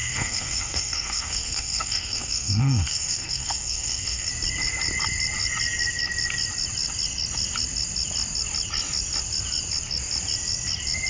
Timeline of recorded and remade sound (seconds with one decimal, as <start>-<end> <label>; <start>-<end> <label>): 0.0-4.3 remade; 4.3-11.1 recorded